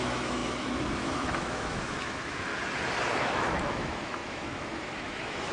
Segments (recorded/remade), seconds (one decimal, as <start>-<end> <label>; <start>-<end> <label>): 0.0-2.5 remade; 2.5-3.1 recorded; 3.1-5.5 remade